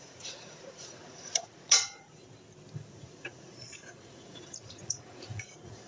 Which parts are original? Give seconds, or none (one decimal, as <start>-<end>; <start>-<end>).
2.2-2.9